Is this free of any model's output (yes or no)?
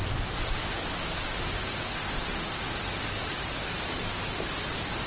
yes